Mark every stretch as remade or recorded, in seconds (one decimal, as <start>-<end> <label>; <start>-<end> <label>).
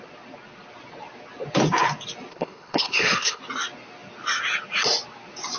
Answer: 0.0-2.3 recorded; 2.3-3.4 remade; 3.4-5.6 recorded